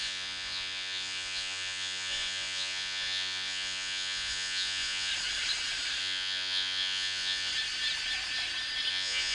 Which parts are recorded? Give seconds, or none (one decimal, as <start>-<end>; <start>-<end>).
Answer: 5.1-6.0; 7.5-8.9